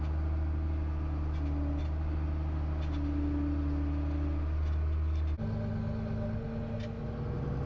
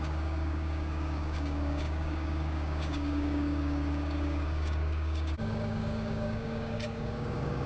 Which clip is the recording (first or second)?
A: first